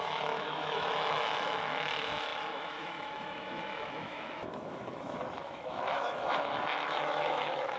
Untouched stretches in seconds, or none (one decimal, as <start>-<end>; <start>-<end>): none